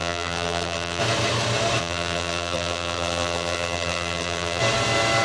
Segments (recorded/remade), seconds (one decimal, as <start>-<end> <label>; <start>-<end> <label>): 0.0-1.0 remade; 1.0-1.8 recorded; 1.8-4.6 remade; 4.6-5.2 recorded